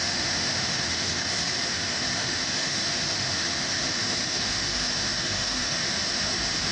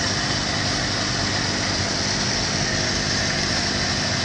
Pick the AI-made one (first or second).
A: first